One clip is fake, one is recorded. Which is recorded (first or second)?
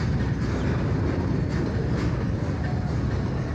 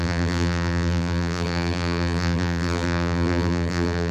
first